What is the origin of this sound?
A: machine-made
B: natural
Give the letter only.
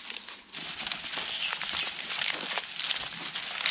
B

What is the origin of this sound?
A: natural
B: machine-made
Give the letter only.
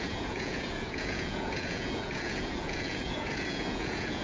B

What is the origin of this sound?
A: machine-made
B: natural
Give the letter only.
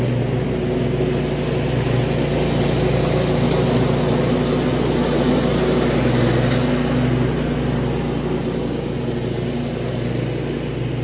B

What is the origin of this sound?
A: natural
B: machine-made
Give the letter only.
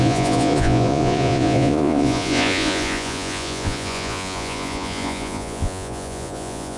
B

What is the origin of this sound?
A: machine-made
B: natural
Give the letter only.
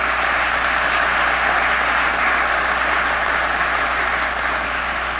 B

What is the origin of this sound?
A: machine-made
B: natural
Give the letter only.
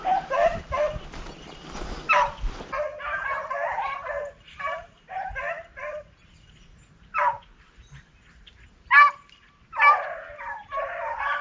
B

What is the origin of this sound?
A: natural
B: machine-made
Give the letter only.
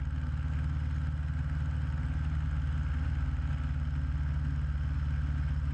A